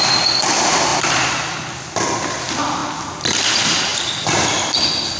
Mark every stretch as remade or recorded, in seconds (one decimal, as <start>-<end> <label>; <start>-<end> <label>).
0.0-0.9 recorded; 0.9-2.2 remade; 2.2-5.2 recorded